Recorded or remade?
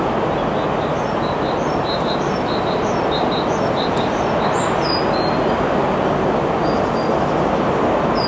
recorded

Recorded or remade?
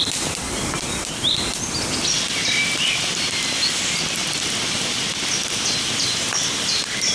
recorded